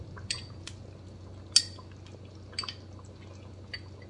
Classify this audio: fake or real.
real